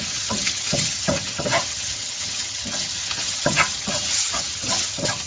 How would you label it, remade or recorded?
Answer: remade